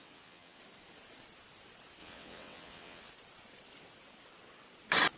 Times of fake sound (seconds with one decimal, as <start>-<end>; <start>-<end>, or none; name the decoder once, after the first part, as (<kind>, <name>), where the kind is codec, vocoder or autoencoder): 0.0-0.6 (vocoder, WaveNeXt); 2.0-3.1